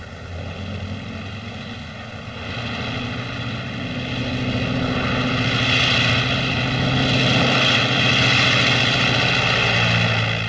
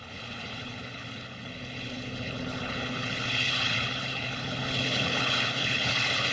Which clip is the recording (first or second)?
first